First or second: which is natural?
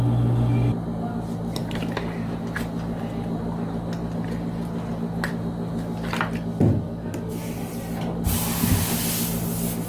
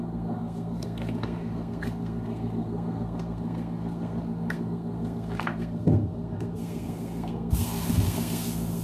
first